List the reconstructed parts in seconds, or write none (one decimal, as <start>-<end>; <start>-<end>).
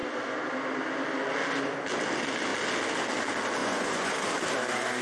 3.6-4.1